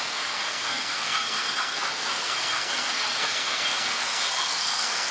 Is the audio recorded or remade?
remade